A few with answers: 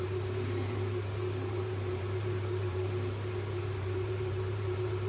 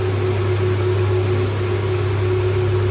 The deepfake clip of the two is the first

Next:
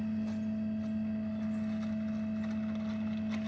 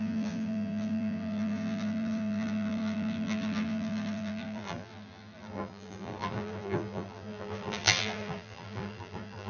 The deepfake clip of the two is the second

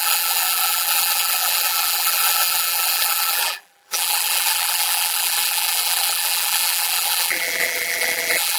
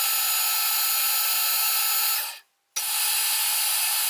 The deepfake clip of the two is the first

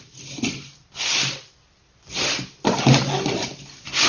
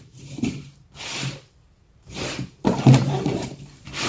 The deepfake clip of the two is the second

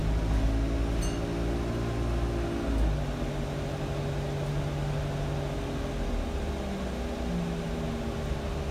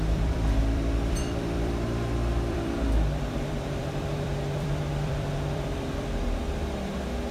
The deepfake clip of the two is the second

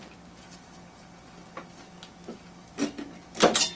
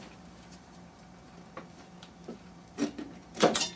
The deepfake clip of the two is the second